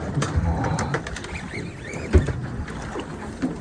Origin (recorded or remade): remade